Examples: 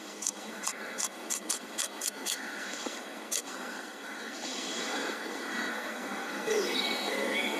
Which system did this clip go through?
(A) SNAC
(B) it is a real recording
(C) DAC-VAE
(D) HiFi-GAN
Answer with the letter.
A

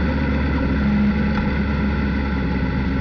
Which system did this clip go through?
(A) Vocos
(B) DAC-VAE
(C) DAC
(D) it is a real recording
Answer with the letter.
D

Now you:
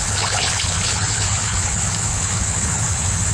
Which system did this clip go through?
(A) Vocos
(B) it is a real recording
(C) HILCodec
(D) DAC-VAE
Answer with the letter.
C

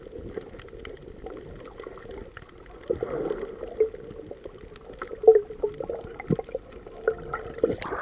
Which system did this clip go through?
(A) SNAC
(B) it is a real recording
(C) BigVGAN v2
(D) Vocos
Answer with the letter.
B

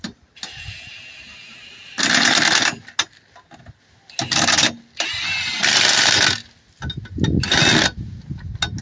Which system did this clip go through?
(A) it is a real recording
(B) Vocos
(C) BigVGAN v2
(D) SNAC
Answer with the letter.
A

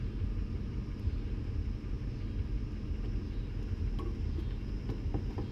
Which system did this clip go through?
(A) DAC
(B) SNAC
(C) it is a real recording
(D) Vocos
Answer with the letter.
C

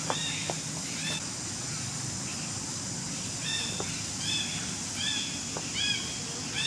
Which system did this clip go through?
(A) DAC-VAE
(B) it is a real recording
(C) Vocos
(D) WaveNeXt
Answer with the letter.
B